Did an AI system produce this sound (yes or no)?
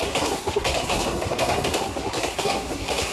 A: yes